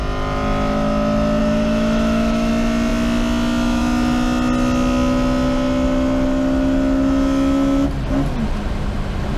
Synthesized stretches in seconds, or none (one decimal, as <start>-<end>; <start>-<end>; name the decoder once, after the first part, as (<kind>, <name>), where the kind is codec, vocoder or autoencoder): 1.4-2.5 (autoencoder, DAC-VAE)